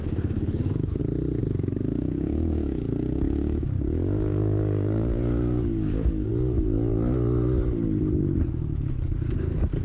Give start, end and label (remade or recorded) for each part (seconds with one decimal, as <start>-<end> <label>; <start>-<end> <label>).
0.0-1.0 remade; 1.0-1.4 recorded; 1.4-6.3 remade; 6.3-9.8 recorded